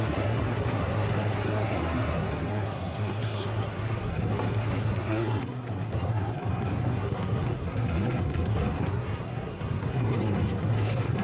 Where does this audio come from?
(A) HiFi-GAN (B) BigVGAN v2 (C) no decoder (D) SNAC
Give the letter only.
D